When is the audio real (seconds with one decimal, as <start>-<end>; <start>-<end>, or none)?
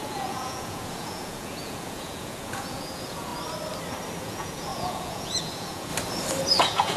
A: 3.3-4.2; 5.9-6.6